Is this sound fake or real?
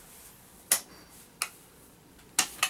real